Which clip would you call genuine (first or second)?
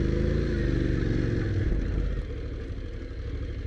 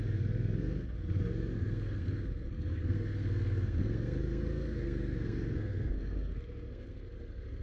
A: first